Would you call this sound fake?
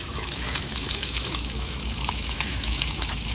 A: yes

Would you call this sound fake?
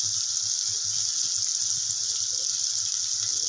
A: no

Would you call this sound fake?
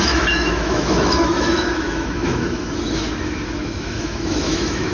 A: yes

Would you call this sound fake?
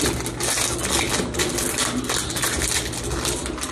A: no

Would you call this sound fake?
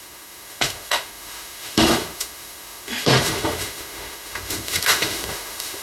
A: yes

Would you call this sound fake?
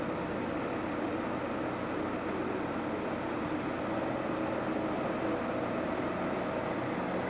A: no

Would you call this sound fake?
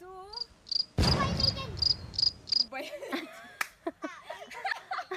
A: no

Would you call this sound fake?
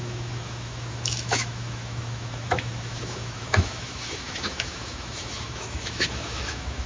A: yes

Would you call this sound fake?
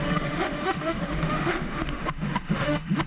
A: yes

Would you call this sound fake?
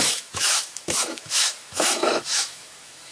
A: yes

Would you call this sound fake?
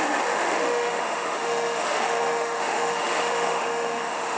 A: yes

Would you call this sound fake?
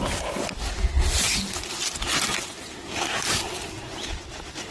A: no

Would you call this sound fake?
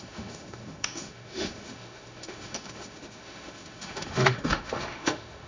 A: yes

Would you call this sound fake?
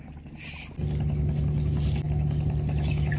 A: no